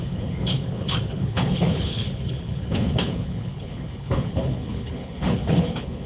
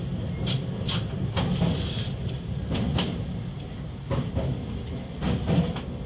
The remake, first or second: first